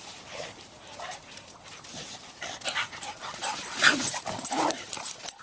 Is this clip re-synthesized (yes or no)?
yes